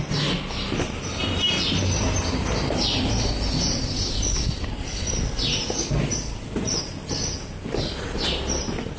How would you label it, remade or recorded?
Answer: recorded